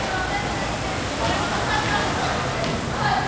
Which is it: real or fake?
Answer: real